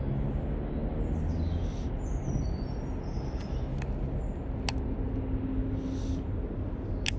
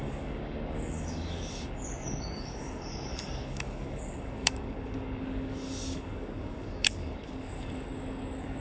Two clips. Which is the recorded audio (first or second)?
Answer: first